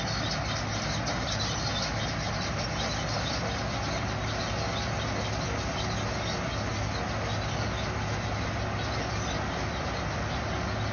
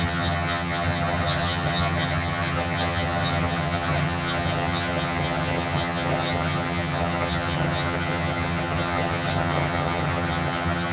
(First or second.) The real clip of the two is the first